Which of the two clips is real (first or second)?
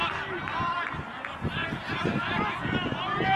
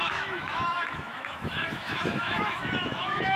first